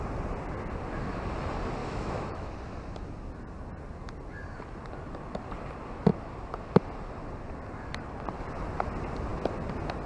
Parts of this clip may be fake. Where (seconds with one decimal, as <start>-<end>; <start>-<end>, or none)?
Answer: 1.8-2.5

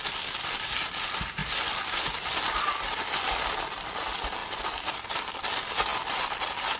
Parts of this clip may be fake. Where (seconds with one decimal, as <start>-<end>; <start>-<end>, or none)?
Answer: none

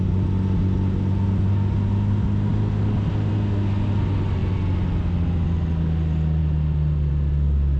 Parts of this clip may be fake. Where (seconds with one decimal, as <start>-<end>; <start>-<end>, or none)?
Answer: none

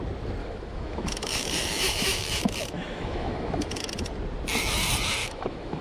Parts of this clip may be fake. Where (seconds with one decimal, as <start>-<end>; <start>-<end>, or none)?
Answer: 0.4-3.9; 5.2-5.8

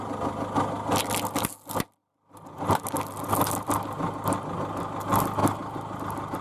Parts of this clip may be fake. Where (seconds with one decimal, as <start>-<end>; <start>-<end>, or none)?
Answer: none

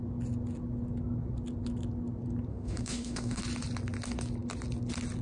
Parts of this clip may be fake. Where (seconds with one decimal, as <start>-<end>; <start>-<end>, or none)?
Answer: 2.5-3.4

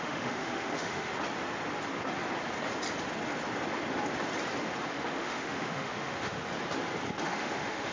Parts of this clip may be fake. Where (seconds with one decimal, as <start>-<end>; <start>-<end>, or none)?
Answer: 0.0-1.1; 4.9-6.4; 7.2-7.9

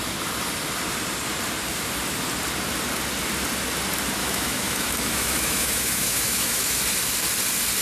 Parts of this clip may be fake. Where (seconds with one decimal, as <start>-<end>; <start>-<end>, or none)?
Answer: 4.2-6.8